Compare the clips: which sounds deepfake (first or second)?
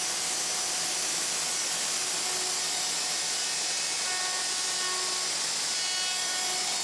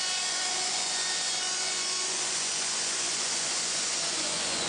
second